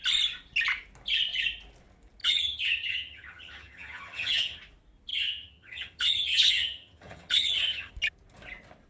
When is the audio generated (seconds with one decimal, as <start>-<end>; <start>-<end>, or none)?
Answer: 2.2-4.6; 5.1-7.9